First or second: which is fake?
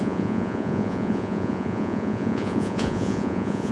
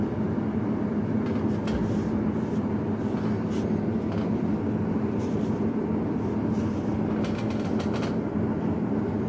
first